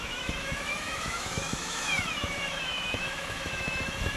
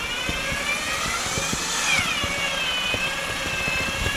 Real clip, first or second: second